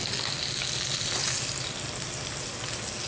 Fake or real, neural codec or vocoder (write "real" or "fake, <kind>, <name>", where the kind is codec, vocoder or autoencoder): real